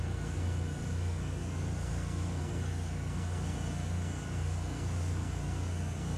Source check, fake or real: fake